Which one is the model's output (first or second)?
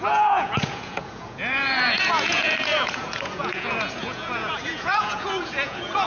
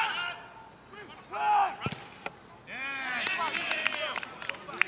first